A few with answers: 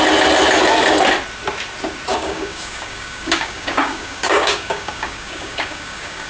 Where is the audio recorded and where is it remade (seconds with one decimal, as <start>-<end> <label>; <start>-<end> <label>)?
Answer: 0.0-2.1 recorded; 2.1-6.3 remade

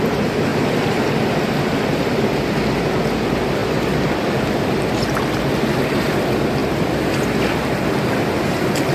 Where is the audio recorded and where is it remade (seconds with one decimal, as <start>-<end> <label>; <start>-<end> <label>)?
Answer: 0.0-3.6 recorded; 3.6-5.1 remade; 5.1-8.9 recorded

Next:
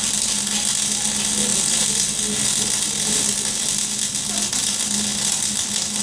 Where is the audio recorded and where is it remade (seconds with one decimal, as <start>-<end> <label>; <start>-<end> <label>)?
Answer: 0.0-6.0 recorded

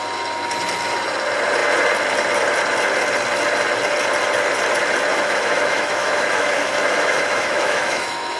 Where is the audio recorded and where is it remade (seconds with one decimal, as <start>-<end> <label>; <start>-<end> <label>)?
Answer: 0.0-5.1 recorded; 5.1-8.4 remade